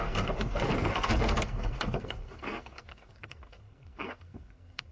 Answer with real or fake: fake